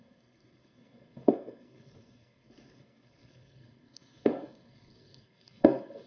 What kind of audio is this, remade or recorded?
remade